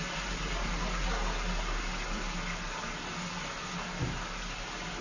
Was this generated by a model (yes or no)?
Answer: no